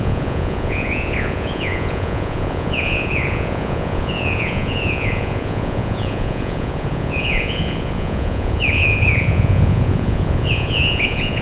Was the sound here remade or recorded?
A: remade